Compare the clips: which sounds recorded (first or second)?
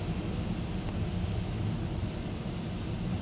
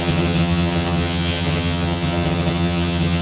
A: first